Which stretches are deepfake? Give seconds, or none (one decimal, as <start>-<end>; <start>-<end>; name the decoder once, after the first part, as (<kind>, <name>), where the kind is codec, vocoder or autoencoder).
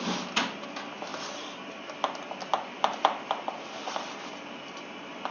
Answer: none